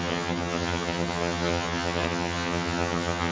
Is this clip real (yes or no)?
no